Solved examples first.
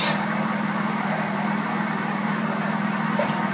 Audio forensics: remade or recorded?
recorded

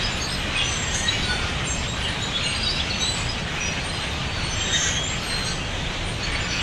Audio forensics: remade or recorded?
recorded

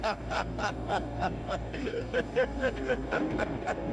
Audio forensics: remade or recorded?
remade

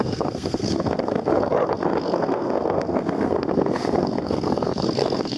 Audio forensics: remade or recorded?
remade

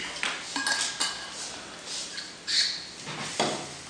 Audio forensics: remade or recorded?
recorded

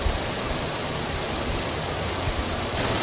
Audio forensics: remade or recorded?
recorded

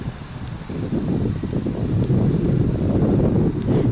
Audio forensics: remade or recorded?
recorded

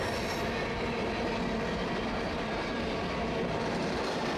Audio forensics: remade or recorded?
recorded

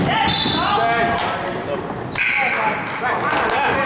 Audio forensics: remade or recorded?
recorded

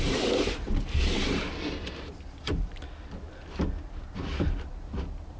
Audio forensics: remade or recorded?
recorded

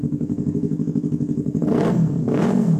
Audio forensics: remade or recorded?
remade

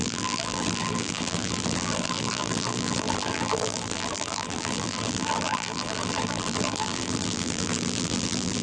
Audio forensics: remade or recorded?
remade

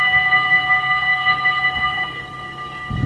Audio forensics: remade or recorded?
remade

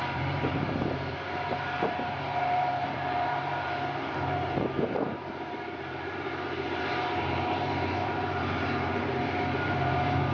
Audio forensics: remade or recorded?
remade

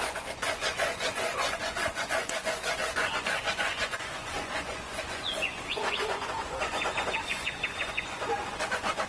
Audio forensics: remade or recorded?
remade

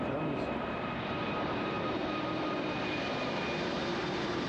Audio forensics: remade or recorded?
remade